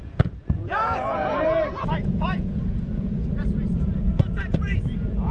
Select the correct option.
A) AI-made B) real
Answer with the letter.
A